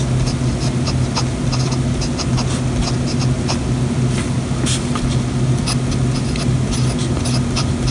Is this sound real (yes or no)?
yes